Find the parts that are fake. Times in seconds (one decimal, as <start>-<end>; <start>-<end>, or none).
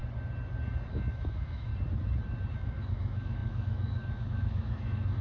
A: 0.9-1.7; 2.5-5.2